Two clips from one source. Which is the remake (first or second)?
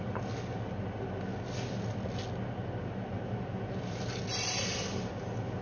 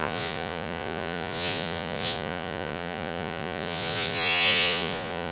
second